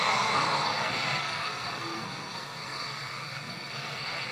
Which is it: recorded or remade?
remade